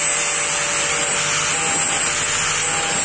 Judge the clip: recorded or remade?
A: recorded